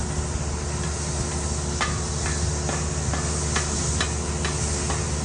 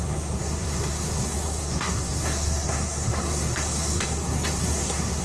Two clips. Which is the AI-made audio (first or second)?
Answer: second